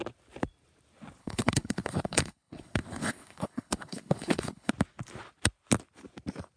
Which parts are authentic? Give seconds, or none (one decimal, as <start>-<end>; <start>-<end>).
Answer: 0.0-1.2; 4.7-6.6